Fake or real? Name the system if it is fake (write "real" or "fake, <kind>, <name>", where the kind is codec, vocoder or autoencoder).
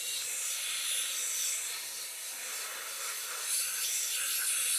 real